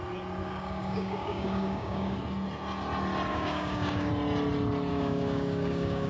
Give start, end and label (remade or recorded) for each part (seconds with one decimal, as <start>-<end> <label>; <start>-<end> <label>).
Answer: 0.0-0.4 recorded; 0.4-2.2 remade; 2.2-3.3 recorded; 3.3-4.1 remade; 4.1-4.9 recorded; 4.9-6.1 remade